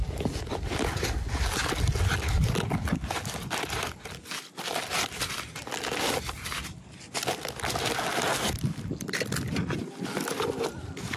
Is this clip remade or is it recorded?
recorded